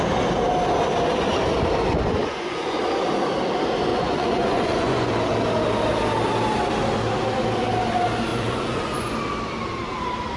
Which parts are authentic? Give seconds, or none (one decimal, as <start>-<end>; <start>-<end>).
0.0-2.2; 2.8-3.9; 5.1-8.3; 9.1-10.4